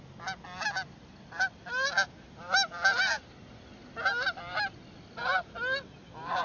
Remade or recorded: recorded